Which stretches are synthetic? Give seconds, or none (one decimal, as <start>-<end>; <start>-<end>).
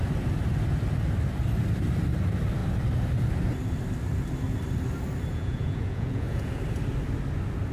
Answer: 5.3-6.6